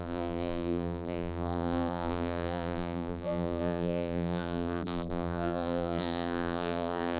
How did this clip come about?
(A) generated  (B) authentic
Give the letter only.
A